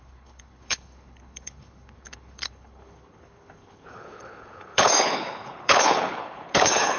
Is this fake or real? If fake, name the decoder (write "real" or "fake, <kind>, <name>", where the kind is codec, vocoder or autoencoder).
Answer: fake, codec, HILCodec